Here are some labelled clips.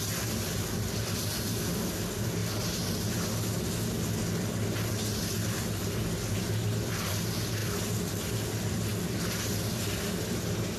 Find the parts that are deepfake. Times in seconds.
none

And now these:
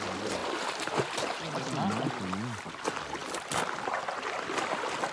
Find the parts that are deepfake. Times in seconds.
none

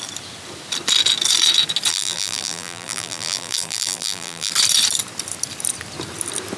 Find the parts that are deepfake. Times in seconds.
1.9-4.5 (vocoder, BigVGAN v2)

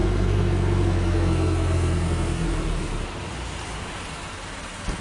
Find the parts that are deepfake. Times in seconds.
0.0-2.5 (codec, SNAC)

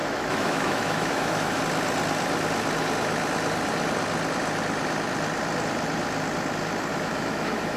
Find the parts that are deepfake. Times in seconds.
0.0-1.6 (autoencoder, DAC-VAE); 6.9-7.8